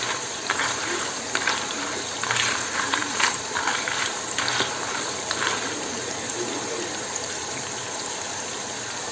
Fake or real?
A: fake